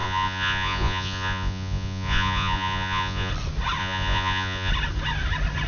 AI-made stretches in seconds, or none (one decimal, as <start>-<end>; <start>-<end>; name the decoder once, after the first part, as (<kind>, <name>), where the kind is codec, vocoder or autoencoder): 0.0-3.3 (vocoder, Vocos); 3.8-4.7